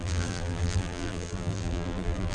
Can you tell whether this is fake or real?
fake